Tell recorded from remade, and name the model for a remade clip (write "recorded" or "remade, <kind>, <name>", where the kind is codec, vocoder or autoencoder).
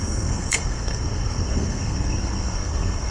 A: remade, codec, SNAC